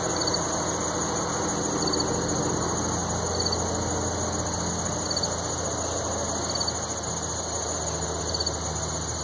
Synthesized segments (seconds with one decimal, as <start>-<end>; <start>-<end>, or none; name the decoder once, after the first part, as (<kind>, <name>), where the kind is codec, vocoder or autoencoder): none

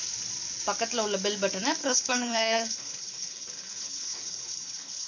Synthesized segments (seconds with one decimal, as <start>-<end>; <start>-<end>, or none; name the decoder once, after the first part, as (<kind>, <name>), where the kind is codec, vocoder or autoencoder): 1.8-5.1 (codec, HILCodec)

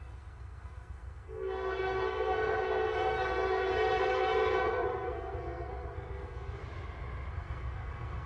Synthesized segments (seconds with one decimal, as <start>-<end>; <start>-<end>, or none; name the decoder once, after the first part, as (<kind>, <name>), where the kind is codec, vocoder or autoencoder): 0.0-6.6 (codec, SNAC); 7.3-8.3